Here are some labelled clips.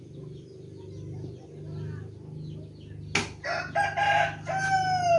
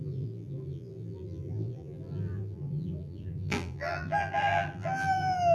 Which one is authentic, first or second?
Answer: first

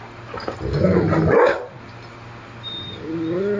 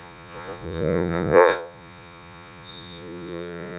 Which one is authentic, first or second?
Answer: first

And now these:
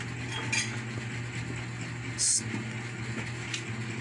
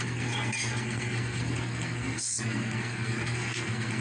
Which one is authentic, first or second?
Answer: first